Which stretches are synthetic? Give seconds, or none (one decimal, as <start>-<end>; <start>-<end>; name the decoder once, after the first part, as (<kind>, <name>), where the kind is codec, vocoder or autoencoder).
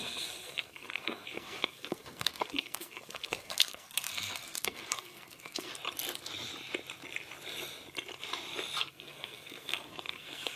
0.0-5.7 (codec, SNAC); 8.9-10.6